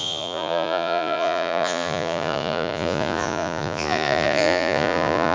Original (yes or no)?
no